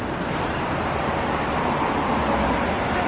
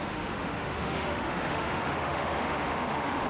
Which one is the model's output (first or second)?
second